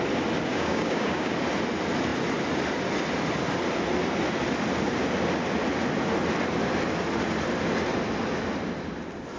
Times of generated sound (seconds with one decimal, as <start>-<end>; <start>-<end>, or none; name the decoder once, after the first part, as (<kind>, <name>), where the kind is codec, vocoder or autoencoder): 0.5-1.3 (codec, DAC)